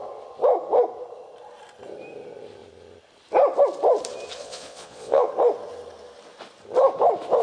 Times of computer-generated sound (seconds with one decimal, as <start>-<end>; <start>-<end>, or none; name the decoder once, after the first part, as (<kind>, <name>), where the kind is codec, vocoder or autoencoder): 4.4-5.3 (vocoder, Vocos)